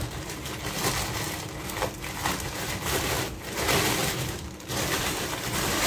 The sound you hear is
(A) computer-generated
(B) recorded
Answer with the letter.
B